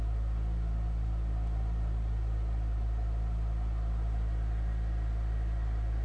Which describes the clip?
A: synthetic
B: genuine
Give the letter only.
B